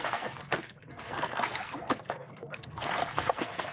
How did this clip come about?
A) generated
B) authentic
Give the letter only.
A